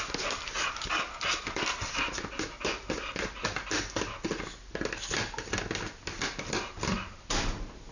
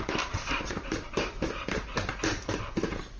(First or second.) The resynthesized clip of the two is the second